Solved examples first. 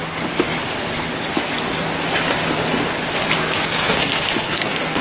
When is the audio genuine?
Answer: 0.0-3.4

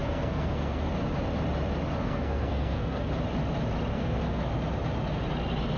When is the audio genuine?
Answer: 0.9-2.0; 3.1-3.9; 4.4-5.8

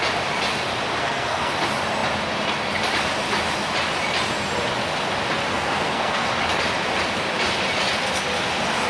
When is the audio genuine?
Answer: 0.0-1.0; 1.5-5.5; 6.3-8.9

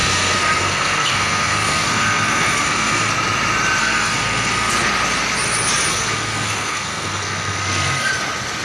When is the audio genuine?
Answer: 3.1-3.8; 4.7-5.9; 8.1-8.6

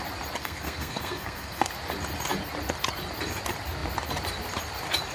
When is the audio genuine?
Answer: 0.0-0.4; 1.7-5.1

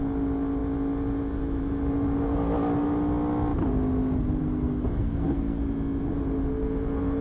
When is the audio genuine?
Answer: 0.0-4.4; 5.6-7.2

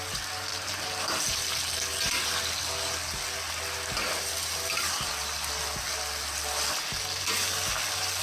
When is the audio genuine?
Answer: 0.0-8.2